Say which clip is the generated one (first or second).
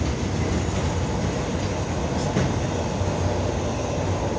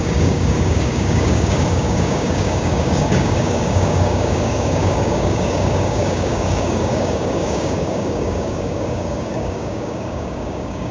second